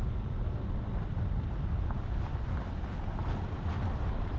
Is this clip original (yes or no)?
yes